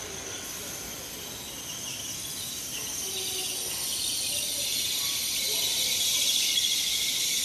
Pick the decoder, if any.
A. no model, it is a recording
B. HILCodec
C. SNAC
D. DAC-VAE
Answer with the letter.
A